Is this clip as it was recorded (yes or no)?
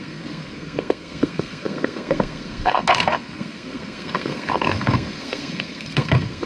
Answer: no